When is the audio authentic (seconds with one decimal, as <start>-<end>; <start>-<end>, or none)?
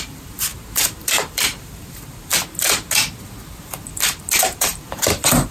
2.3-3.7